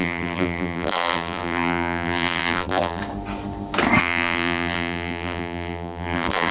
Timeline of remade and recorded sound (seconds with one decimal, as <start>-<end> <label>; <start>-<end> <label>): 0.0-3.0 remade; 3.0-4.0 recorded; 4.0-6.5 remade